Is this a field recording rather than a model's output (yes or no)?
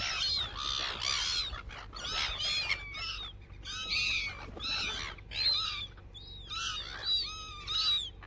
yes